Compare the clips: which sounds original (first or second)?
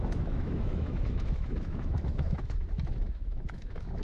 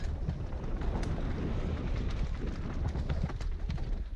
second